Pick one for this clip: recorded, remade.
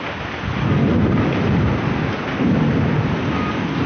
recorded